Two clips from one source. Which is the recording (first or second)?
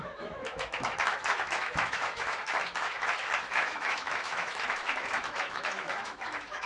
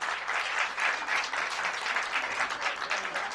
second